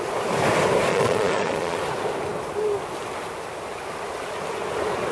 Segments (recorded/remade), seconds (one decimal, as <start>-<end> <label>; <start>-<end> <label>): 0.0-0.9 recorded; 0.9-1.8 remade; 1.8-5.1 recorded